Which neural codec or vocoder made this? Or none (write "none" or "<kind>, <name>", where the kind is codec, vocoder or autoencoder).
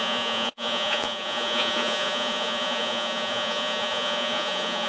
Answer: vocoder, Vocos